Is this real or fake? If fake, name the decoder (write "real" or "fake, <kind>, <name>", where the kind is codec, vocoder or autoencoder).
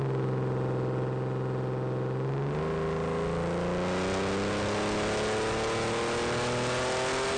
real